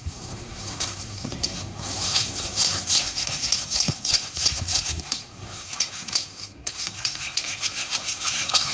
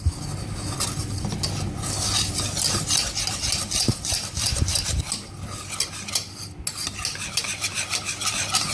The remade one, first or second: first